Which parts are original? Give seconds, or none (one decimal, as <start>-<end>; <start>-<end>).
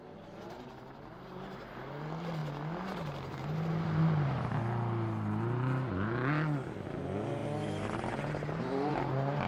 0.0-9.5